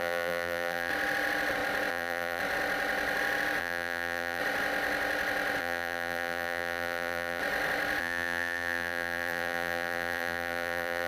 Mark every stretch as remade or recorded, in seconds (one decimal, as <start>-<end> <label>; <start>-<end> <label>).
0.0-0.9 remade; 0.9-1.9 recorded; 1.9-2.4 remade; 2.4-3.6 recorded; 3.6-4.4 remade; 4.4-5.6 recorded; 5.6-7.4 remade; 7.4-8.0 recorded; 8.0-11.1 remade